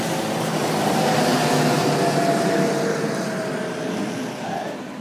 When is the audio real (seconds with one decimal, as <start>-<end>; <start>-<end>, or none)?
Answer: 0.0-5.0